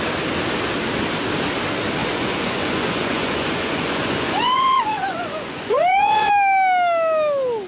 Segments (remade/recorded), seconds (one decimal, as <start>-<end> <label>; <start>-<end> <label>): 0.0-2.0 recorded; 2.0-6.3 remade; 6.3-7.7 recorded